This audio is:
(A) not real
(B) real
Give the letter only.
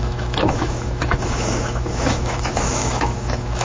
A